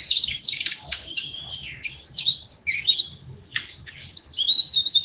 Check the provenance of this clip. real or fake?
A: fake